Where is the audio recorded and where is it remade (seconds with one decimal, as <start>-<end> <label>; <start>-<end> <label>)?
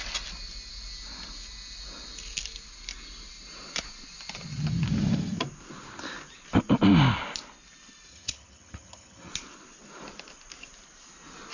0.0-8.1 recorded; 8.1-9.3 remade; 9.3-11.5 recorded